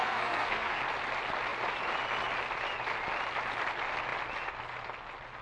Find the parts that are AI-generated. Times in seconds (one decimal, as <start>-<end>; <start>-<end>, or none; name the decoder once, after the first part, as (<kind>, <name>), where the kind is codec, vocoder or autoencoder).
0.0-0.8 (codec, SNAC)